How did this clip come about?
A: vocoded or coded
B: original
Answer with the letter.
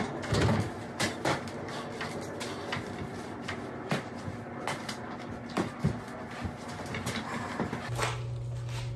B